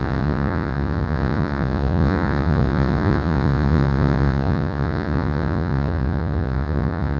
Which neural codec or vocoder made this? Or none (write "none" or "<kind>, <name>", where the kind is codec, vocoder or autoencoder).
vocoder, Vocos